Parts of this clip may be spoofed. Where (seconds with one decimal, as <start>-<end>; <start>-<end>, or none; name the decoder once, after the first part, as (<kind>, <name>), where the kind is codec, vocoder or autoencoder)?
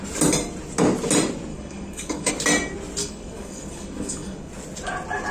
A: 1.5-2.3 (codec, DAC); 3.0-4.5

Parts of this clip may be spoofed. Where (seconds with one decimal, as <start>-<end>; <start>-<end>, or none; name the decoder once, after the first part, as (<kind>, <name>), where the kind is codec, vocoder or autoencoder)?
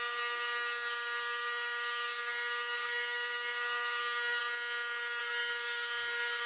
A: 0.0-4.4 (codec, DAC); 5.2-6.5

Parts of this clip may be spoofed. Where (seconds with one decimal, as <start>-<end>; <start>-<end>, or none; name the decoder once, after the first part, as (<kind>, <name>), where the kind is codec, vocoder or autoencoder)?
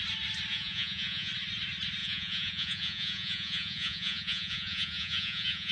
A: 0.5-1.3 (vocoder, Vocos); 2.0-5.7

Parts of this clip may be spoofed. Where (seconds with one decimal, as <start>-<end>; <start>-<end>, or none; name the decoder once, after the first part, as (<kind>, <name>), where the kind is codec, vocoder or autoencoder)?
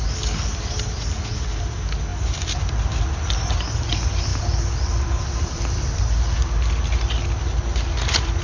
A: 4.3-8.4 (vocoder, BigVGAN v2)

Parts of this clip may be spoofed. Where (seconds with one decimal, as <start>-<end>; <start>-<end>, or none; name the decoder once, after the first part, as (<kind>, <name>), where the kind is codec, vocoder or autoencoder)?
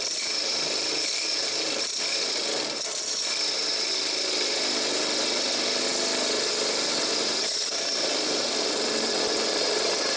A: none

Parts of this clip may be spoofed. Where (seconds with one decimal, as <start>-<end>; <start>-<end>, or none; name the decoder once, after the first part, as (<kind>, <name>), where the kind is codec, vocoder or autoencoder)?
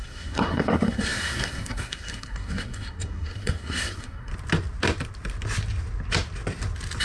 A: 0.0-4.3 (codec, SNAC)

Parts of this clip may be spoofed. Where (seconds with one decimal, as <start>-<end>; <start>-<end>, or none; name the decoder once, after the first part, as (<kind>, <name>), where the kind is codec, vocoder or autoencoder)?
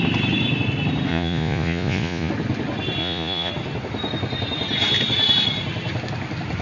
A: 1.1-2.3 (vocoder, Vocos); 3.0-3.5